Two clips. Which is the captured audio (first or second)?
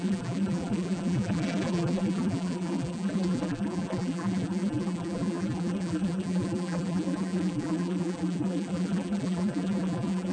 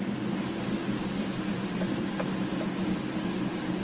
second